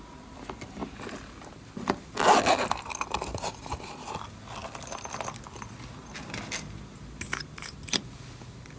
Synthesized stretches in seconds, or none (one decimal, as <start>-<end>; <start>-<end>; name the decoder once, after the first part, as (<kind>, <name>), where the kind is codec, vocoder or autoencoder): none